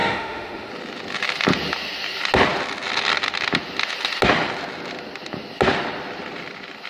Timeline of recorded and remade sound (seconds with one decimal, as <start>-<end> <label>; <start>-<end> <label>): 0.0-0.7 remade; 0.7-6.9 recorded